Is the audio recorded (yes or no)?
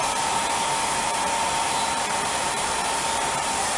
no